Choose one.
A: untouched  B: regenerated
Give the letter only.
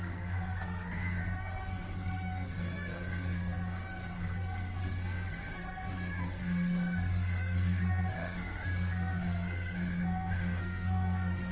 B